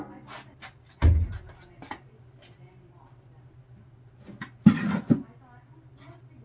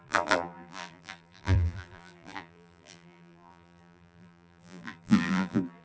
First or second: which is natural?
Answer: first